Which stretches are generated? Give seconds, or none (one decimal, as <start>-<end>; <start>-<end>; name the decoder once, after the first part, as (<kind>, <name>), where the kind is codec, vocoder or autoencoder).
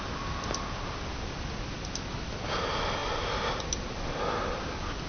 none